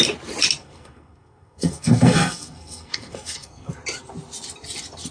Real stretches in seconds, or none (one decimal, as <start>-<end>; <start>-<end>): 0.0-0.6; 3.7-5.1